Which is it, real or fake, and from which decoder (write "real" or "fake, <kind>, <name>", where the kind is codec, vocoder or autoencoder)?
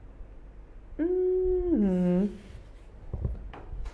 real